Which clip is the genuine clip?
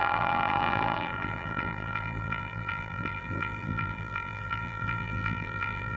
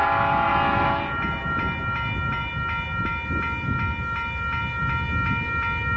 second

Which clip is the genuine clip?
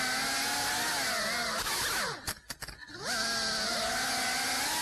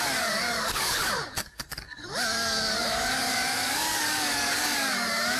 first